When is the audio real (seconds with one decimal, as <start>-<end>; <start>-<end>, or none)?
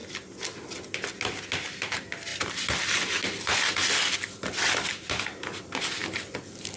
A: 0.0-6.8